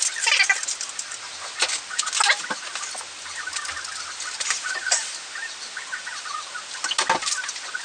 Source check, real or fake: real